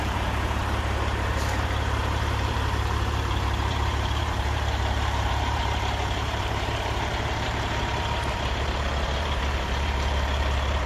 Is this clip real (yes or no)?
no